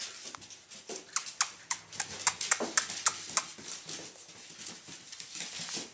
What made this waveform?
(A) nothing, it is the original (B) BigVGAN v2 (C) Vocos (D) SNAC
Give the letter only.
A